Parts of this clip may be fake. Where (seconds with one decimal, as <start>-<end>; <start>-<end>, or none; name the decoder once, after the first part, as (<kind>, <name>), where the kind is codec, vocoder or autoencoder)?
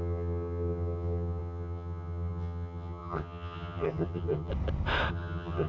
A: 0.0-4.5 (vocoder, HiFi-GAN); 5.1-5.7